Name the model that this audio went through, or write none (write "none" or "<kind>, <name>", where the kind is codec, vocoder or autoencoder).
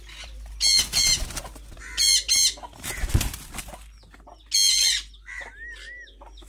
none